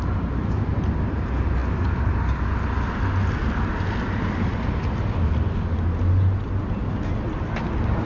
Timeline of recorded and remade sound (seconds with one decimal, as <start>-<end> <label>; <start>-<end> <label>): 0.0-8.1 recorded

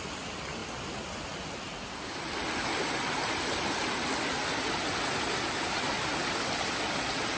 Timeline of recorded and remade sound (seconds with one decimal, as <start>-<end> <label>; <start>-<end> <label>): 0.0-7.4 recorded

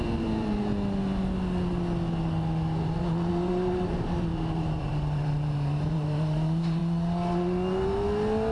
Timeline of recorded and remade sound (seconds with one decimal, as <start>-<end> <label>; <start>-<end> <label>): 0.0-0.7 remade; 0.7-3.3 recorded; 3.3-6.8 remade; 6.8-8.5 recorded